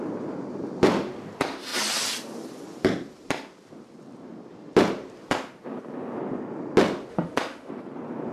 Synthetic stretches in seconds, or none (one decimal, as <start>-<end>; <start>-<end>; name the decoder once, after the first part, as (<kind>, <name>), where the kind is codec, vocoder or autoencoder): 7.1-7.7 (autoencoder, DAC-VAE)